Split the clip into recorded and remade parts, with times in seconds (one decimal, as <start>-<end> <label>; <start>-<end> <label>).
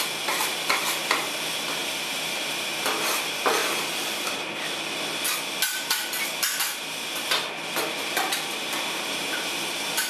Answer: 0.0-3.6 remade; 3.6-6.2 recorded; 6.2-10.1 remade